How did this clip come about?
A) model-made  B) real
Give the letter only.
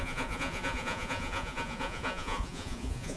A